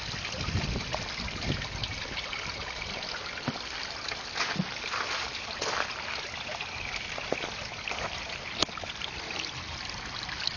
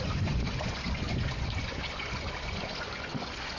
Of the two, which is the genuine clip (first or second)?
first